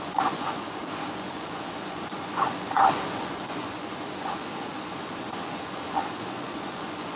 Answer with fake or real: fake